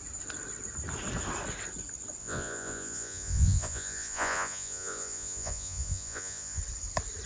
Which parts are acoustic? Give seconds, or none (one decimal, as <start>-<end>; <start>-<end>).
0.0-2.2; 6.6-7.3